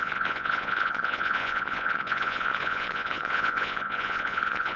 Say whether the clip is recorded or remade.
remade